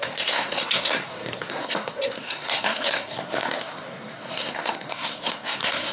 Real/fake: fake